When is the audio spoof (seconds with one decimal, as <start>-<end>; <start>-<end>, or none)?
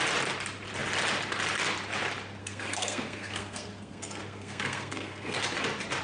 2.4-5.4